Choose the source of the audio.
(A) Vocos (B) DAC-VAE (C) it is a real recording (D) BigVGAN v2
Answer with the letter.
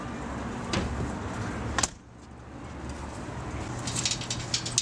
C